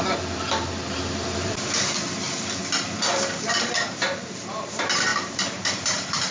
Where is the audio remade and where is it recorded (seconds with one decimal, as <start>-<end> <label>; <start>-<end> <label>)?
0.0-2.6 remade; 2.6-3.8 recorded; 3.8-6.3 remade